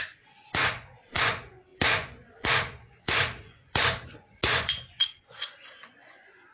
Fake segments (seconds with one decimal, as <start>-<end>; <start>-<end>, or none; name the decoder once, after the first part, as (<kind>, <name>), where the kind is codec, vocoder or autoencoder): 0.0-6.5 (vocoder, Vocos)